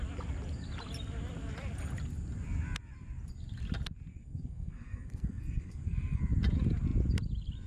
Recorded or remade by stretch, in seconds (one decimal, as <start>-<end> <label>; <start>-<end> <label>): 0.0-4.1 recorded; 4.1-6.2 remade; 6.2-7.7 recorded